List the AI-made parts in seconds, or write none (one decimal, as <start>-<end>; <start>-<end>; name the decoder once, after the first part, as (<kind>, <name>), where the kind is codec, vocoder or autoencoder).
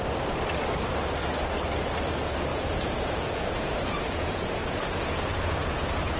2.5-6.2 (vocoder, Vocos)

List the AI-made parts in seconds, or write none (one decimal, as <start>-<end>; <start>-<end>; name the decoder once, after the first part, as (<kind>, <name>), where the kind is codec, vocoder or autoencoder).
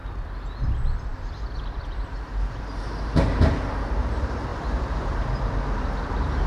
0.0-0.7 (vocoder, BigVGAN v2); 1.1-2.1; 4.5-6.5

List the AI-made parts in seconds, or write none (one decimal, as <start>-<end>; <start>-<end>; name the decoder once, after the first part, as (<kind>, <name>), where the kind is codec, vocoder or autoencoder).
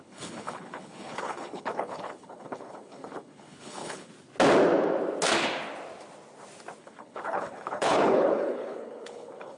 0.0-4.1 (codec, HILCodec); 6.8-9.6